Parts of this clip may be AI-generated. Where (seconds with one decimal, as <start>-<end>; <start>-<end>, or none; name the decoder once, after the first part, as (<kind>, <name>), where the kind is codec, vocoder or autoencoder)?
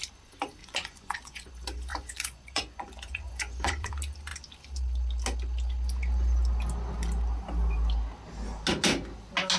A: 0.6-1.5 (vocoder, Vocos); 1.9-3.9